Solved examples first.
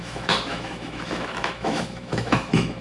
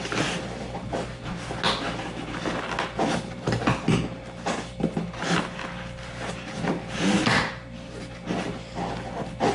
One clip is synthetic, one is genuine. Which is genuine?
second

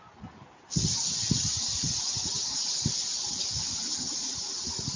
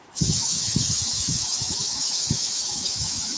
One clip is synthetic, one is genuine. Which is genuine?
first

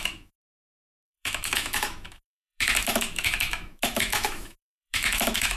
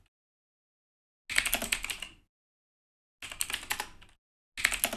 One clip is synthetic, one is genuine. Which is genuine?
second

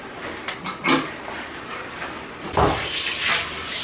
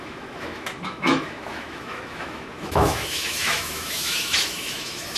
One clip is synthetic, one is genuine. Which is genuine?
first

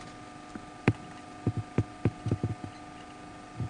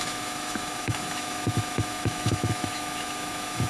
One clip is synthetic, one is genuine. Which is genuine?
first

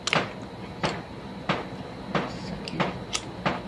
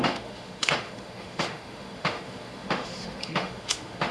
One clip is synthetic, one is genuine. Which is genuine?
first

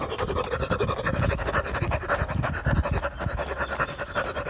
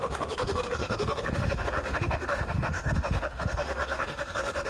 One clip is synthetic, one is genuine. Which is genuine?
first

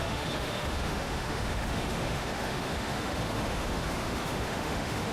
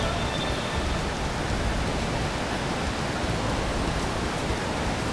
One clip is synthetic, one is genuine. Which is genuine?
second